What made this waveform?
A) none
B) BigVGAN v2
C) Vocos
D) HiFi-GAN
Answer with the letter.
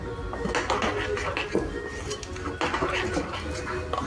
A